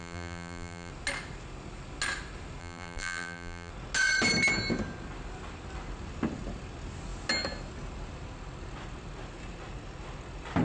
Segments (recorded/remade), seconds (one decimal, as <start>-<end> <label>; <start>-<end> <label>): 0.0-0.9 remade; 0.9-2.6 recorded; 2.6-3.7 remade; 3.7-10.6 recorded